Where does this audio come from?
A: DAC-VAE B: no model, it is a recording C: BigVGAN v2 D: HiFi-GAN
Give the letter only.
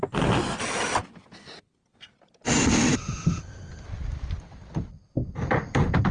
B